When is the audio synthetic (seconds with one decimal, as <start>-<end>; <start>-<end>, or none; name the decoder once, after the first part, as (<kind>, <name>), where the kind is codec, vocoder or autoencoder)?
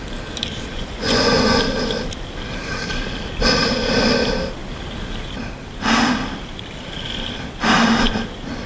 0.7-1.6 (vocoder, Vocos)